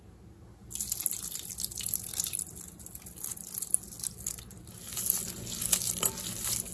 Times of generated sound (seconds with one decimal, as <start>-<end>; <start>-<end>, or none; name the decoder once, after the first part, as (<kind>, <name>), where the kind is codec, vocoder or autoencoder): none